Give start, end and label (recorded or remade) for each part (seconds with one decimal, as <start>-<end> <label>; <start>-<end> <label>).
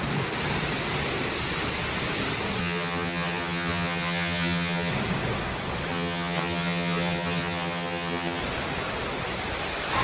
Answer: 0.0-2.6 recorded; 2.6-4.9 remade; 4.9-5.9 recorded; 5.9-8.4 remade; 8.4-10.0 recorded